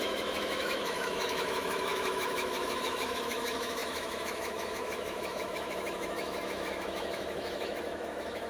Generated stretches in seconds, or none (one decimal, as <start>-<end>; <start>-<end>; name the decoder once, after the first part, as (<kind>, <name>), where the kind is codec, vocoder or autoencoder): 0.0-8.5 (autoencoder, DAC-VAE)